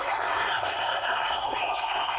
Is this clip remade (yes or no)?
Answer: yes